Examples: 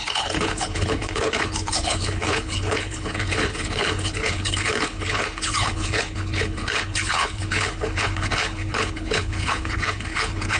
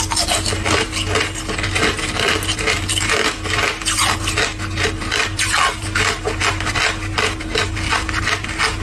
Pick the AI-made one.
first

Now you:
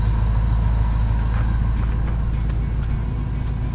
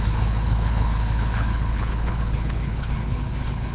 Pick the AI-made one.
second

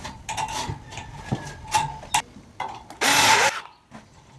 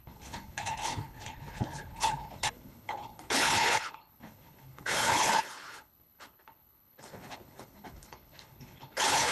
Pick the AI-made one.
second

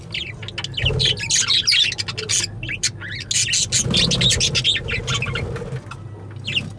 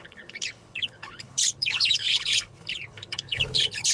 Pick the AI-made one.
second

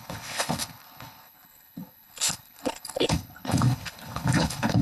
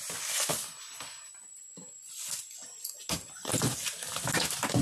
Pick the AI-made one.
first